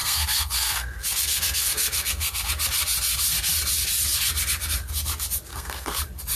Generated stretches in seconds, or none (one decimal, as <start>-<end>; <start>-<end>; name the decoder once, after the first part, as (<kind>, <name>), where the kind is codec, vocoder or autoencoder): 0.0-2.5 (codec, SNAC); 5.5-6.0